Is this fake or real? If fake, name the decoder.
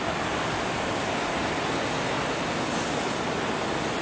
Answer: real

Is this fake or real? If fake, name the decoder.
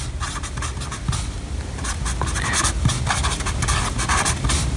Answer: real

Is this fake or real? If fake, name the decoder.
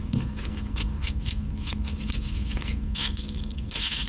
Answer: fake, codec, SNAC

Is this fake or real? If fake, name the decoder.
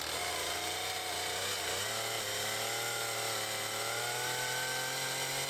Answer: real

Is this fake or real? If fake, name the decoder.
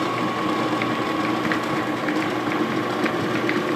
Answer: real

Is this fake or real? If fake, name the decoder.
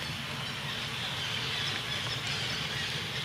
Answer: real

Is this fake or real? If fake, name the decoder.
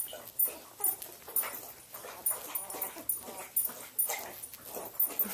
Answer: real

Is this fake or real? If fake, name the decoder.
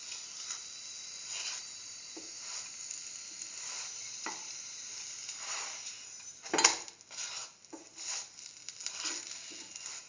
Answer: real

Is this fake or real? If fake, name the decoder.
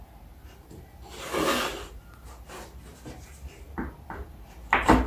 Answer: real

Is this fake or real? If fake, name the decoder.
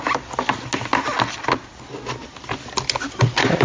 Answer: real